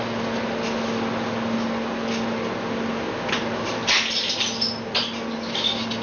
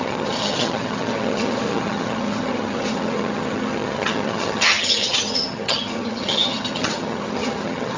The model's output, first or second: second